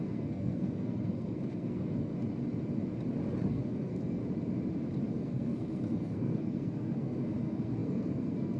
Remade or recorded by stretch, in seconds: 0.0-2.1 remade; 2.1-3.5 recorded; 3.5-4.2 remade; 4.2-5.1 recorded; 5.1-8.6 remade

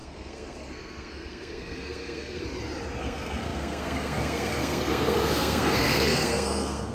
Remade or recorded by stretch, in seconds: 0.0-2.4 remade; 2.4-3.0 recorded; 3.0-6.9 remade

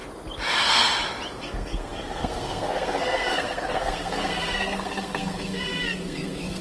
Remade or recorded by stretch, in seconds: 0.0-1.4 recorded; 1.4-6.6 remade